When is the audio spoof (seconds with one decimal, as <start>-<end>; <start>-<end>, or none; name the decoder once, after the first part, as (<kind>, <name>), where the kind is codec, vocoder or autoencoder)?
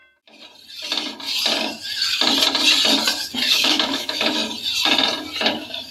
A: 3.5-4.4 (autoencoder, DAC-VAE)